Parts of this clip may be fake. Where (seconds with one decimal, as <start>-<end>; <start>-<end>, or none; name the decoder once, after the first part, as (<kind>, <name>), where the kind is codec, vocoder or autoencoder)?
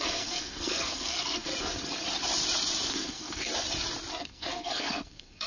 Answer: 0.0-1.5 (codec, SNAC); 2.9-3.5; 4.2-5.5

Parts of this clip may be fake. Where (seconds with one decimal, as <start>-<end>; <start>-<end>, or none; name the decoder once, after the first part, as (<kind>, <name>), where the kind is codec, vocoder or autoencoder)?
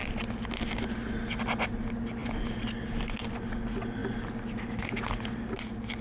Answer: none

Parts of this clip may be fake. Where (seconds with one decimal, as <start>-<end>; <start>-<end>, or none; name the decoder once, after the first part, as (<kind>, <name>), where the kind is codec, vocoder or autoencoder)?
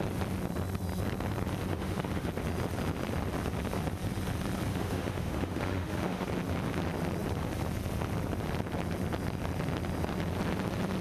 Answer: 1.7-2.3 (autoencoder, DAC-VAE); 4.7-6.3